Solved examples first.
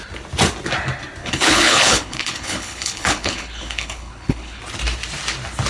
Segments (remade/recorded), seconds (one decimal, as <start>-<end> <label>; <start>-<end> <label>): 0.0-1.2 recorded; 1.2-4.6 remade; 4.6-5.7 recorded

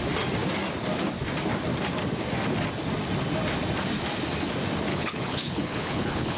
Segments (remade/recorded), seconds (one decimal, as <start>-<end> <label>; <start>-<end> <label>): 0.0-4.9 recorded; 4.9-6.4 remade

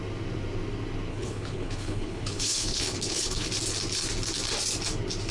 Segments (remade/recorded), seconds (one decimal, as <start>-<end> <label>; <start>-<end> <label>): 0.0-1.1 recorded; 1.1-3.5 remade; 3.5-5.3 recorded

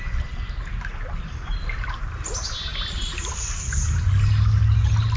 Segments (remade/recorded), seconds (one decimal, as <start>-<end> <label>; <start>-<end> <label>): 0.0-5.2 recorded

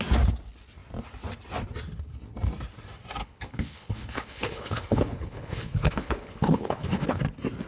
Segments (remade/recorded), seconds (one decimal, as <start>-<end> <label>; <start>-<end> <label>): 0.0-3.2 recorded; 3.2-7.2 remade; 7.2-7.7 recorded

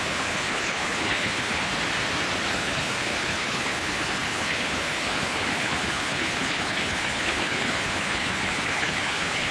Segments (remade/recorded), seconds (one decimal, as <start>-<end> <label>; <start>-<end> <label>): 0.0-1.7 remade; 1.7-2.5 recorded; 2.5-9.5 remade